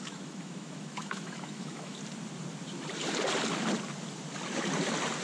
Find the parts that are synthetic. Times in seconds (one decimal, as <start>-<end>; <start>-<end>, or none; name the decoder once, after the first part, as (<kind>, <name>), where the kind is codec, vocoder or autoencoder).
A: 0.0-2.0 (autoencoder, DAC-VAE)

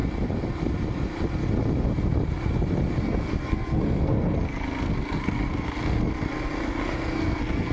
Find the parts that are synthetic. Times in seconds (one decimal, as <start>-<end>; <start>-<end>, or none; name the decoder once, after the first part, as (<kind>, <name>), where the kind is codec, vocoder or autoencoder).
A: 3.0-7.7 (codec, SNAC)

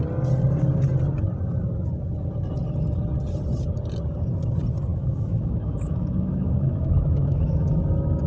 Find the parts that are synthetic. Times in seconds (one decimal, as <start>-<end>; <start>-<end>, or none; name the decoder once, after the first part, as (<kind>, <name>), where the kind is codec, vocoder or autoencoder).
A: 4.9-7.7 (autoencoder, DAC-VAE)

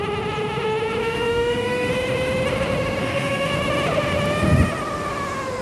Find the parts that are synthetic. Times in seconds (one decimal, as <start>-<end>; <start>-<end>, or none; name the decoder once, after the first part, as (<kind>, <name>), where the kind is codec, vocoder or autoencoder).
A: 1.0-1.9 (autoencoder, DAC-VAE); 3.0-3.5

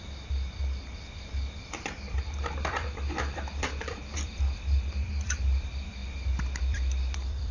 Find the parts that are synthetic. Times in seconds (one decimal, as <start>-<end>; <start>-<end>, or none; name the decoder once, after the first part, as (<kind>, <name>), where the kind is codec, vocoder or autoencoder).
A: 0.0-6.0 (vocoder, BigVGAN v2); 6.6-7.5